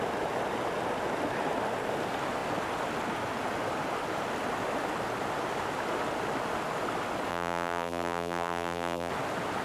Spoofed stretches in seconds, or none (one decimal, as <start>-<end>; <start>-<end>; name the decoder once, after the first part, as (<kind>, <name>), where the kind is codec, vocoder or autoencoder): 7.3-9.1 (vocoder, BigVGAN v2)